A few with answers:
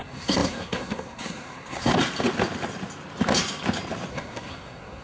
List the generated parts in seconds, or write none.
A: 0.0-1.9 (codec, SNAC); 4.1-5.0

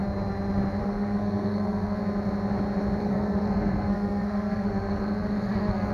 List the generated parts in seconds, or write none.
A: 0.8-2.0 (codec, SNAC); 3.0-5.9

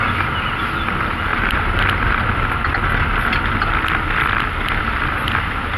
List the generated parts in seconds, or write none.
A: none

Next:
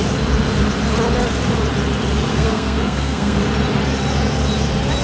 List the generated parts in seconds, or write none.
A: 2.3-3.4 (codec, SNAC)

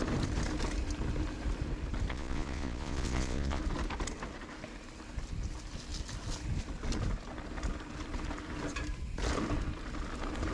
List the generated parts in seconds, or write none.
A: 2.1-3.6 (vocoder, Vocos)